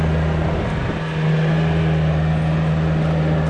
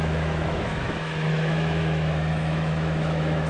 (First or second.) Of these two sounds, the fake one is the second